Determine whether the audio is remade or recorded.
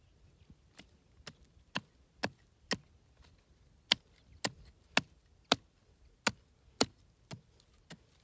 recorded